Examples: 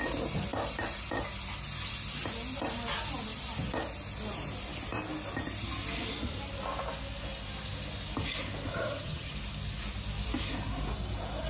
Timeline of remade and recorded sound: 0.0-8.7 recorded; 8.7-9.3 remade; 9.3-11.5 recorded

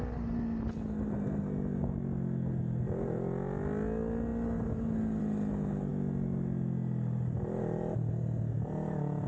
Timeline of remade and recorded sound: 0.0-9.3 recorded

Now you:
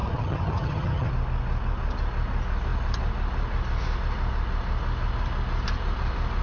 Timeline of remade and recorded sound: 0.0-1.1 remade; 1.1-6.4 recorded